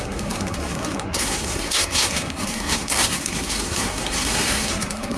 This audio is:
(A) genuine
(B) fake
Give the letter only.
B